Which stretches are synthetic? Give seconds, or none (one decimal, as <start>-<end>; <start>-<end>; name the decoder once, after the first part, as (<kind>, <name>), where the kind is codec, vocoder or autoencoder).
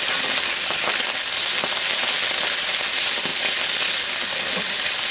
none